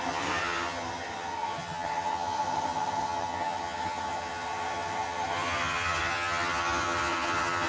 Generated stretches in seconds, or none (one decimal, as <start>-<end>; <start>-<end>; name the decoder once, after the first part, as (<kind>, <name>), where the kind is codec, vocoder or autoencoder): 0.0-7.7 (vocoder, HiFi-GAN)